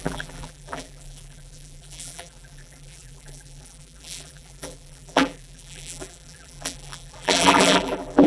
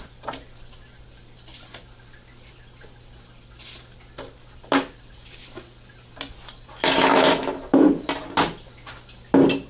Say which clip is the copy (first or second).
first